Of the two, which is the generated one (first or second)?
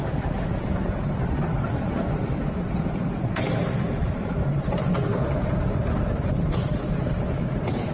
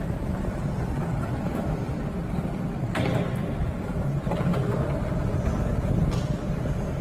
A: first